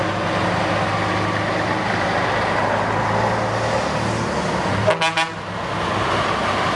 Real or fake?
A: real